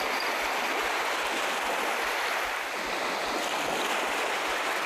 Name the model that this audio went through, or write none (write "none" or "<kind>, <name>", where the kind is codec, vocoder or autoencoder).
none